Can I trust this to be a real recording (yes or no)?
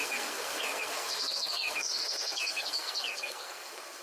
no